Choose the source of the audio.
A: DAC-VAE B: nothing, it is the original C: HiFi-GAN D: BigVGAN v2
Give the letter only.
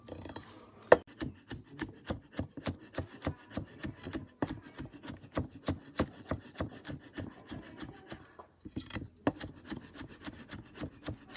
B